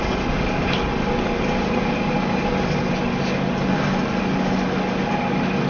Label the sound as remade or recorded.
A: recorded